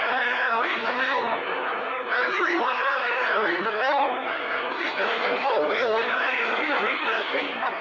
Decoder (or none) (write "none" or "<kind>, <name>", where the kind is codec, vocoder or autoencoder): codec, SNAC